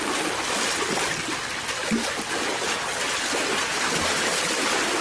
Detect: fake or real real